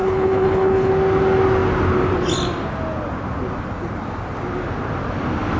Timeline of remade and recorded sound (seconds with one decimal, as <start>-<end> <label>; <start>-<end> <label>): 0.0-0.9 remade; 0.9-5.6 recorded